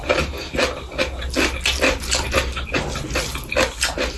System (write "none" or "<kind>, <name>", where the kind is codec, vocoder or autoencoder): none